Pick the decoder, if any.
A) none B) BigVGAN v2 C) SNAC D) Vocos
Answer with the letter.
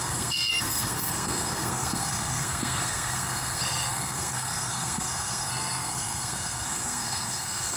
C